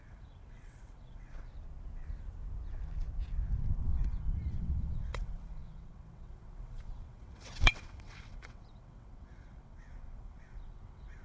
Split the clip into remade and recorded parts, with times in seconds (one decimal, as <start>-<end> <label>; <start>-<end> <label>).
0.0-1.5 remade; 1.5-3.8 recorded; 3.8-11.2 remade